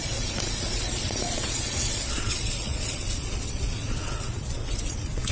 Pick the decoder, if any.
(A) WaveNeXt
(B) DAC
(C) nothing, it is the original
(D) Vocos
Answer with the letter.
D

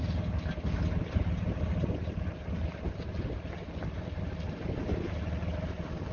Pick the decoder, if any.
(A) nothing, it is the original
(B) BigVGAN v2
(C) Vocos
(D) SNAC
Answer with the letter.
A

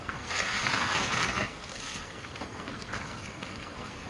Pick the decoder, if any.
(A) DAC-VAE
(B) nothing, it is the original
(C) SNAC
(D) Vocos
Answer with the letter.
C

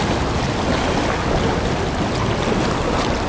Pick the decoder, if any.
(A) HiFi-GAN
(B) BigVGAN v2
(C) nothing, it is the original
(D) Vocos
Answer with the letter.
C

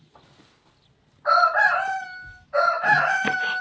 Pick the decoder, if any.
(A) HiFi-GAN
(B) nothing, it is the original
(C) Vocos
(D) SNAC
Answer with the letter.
B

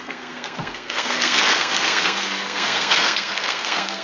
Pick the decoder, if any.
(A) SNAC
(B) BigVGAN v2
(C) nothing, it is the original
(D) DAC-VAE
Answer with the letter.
A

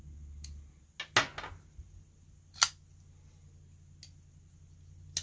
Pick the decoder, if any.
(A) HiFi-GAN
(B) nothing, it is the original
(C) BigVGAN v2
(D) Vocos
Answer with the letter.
B